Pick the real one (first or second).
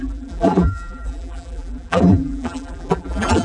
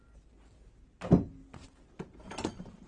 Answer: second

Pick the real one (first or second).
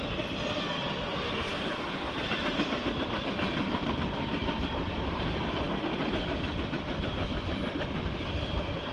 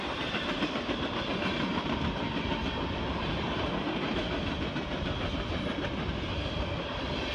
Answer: second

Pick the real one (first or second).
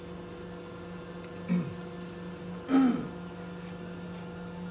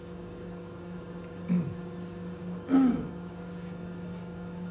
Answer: first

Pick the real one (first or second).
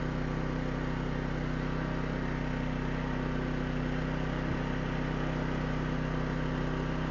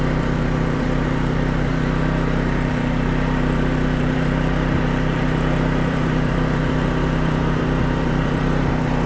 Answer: first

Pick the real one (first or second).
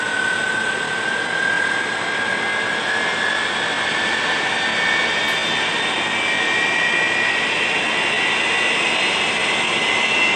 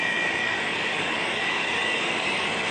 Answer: first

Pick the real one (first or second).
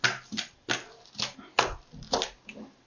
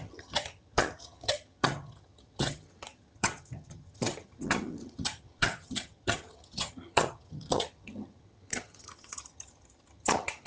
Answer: first